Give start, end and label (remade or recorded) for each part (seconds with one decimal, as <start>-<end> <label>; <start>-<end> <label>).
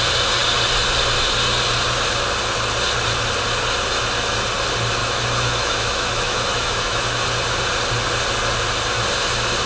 0.0-5.0 recorded; 5.0-7.2 remade; 7.2-9.7 recorded